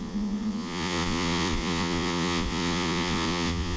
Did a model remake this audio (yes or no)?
yes